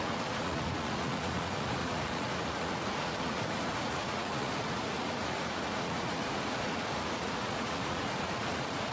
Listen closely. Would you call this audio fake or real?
fake